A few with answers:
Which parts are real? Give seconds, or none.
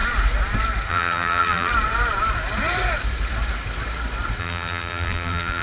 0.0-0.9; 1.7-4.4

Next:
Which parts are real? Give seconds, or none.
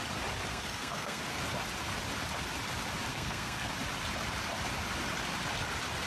0.0-0.5; 1.2-3.1; 3.7-6.1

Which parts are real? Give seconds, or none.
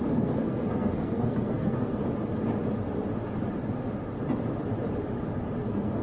2.0-5.6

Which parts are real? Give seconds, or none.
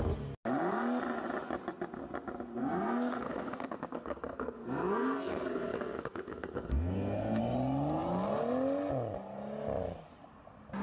0.0-2.6; 7.4-10.8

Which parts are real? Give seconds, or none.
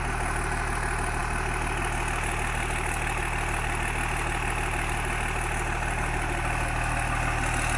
0.0-7.8